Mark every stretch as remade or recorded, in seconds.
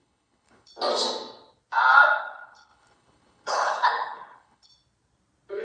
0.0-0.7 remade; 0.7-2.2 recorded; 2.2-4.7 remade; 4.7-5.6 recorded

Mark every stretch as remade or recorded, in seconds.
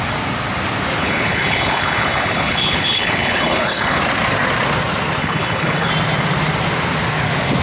0.0-1.0 recorded; 1.0-4.0 remade; 4.0-5.2 recorded; 5.2-5.9 remade; 5.9-7.6 recorded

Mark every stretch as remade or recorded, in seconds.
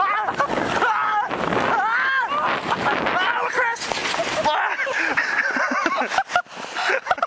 0.0-7.3 recorded